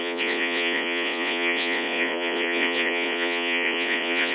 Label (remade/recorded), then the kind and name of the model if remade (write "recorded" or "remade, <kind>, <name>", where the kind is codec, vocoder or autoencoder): remade, vocoder, Vocos